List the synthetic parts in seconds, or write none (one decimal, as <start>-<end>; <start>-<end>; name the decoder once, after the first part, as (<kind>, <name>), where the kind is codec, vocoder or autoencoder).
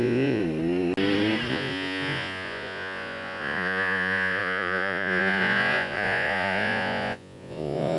0.0-0.4 (vocoder, Vocos); 1.5-8.0